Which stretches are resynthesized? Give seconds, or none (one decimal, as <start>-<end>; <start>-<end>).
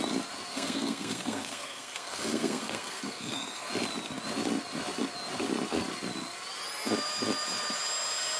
0.5-3.7